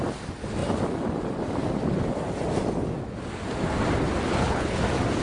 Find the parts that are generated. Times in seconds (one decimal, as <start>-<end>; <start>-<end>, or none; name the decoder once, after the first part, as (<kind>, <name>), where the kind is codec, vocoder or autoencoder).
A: 4.3-4.8 (codec, HILCodec)